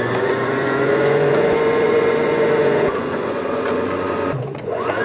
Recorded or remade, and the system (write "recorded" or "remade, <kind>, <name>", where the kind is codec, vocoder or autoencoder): remade, vocoder, Vocos